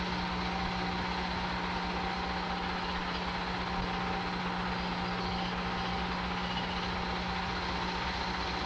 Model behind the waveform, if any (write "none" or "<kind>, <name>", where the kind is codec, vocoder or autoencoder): none